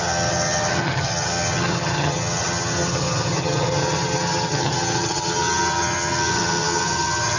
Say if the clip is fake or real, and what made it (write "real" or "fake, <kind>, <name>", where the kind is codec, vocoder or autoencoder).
fake, vocoder, HiFi-GAN